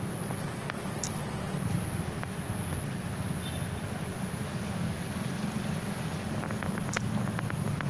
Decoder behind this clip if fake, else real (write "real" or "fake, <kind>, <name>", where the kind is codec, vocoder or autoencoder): real